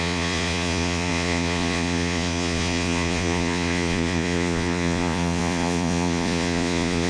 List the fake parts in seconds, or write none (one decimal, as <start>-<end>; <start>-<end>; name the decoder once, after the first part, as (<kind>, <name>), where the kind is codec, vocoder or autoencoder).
0.0-7.1 (vocoder, Vocos)